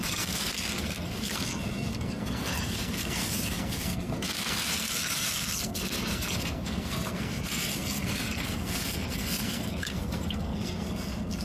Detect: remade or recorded remade